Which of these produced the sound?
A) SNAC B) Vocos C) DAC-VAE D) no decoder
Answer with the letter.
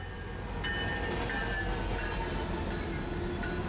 D